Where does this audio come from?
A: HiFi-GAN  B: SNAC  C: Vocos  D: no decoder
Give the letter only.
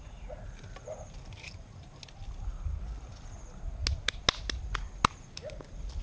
D